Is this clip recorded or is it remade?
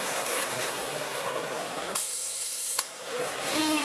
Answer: remade